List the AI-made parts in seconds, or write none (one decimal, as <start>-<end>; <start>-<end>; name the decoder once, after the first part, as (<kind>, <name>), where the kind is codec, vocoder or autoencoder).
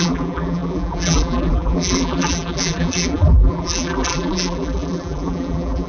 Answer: 0.0-5.9 (vocoder, BigVGAN v2)